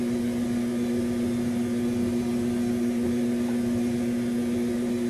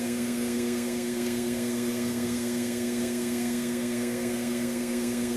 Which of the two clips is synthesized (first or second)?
second